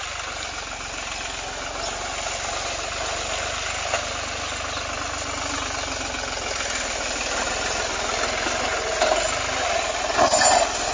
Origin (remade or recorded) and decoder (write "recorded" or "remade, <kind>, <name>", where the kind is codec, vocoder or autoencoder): recorded